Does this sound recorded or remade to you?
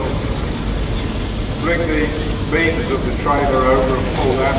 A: recorded